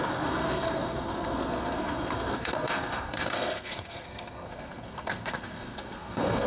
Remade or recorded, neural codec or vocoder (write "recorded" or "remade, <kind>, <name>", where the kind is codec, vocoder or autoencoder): remade, codec, SNAC